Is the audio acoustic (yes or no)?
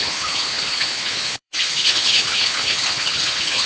no